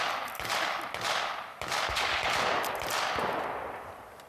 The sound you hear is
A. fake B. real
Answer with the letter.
A